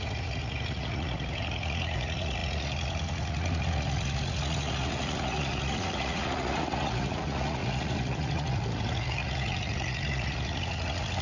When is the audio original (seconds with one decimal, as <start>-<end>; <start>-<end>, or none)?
none